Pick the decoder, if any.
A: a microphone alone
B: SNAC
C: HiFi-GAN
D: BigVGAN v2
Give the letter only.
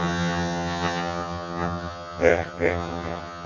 C